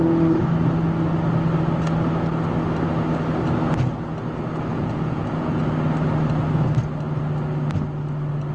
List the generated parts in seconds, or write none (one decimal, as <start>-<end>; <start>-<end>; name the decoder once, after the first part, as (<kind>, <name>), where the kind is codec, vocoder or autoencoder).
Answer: 4.7-5.6 (vocoder, Vocos)